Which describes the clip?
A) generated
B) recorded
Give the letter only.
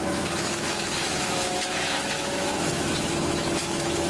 A